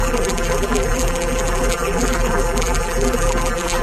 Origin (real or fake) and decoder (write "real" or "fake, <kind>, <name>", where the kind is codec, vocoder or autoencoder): fake, vocoder, BigVGAN v2